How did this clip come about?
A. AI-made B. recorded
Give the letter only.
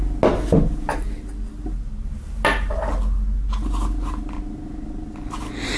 B